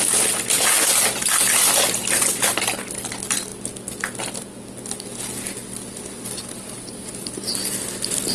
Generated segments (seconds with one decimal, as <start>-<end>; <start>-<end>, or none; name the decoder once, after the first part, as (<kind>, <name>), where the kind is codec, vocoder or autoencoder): none